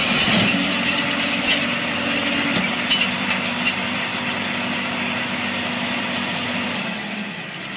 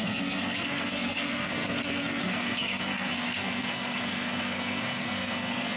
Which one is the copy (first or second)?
second